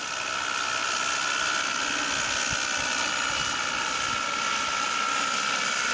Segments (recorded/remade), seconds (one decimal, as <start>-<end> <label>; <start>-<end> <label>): 0.0-5.9 recorded